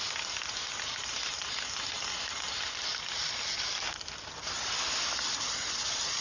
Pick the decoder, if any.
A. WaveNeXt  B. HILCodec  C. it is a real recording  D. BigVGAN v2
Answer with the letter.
C